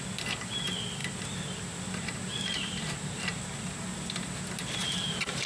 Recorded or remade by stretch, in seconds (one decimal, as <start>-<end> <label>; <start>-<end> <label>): 0.0-2.3 recorded; 2.3-3.4 remade; 3.4-4.8 recorded; 4.8-5.5 remade